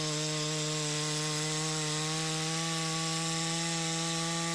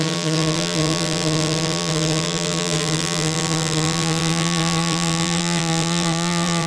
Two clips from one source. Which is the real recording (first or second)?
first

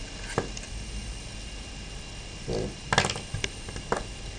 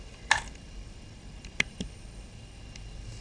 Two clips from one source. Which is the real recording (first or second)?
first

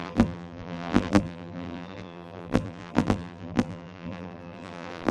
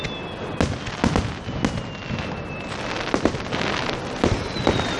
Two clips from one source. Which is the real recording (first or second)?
second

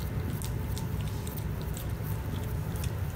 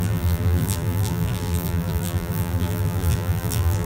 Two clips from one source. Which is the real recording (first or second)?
first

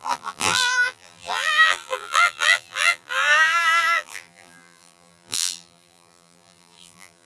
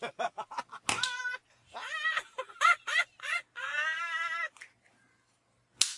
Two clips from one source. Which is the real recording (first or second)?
second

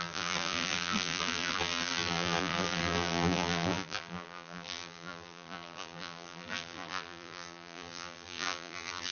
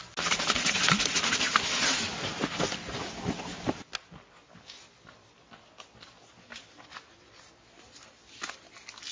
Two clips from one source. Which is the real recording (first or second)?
second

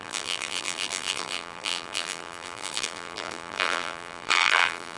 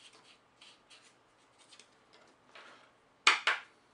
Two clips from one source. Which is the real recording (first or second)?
second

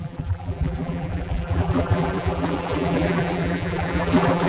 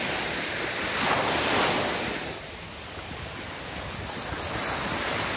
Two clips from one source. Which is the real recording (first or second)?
second